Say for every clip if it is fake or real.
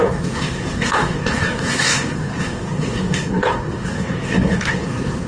fake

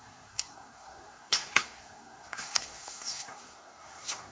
fake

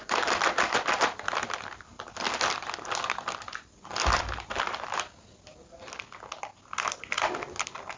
real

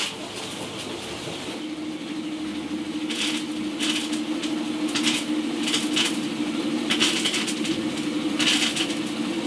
real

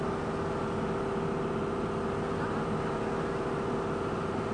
real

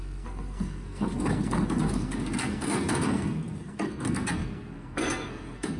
fake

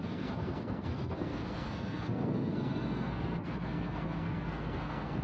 fake